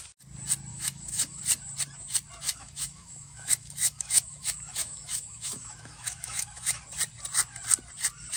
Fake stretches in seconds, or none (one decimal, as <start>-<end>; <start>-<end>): 0.7-1.4; 2.5-6.8